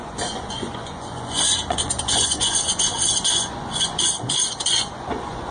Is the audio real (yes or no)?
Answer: no